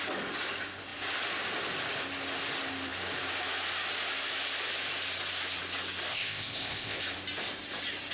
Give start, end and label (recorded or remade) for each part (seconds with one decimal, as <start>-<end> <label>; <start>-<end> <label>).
0.0-6.1 recorded; 6.1-7.0 remade; 7.0-8.1 recorded